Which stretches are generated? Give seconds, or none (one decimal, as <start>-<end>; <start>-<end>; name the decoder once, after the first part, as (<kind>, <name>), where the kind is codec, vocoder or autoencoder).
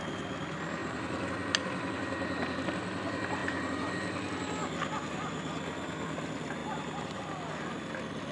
0.8-1.3 (vocoder, BigVGAN v2)